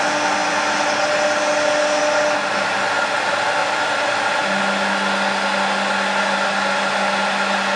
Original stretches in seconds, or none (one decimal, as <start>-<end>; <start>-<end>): 0.0-3.6; 4.6-7.8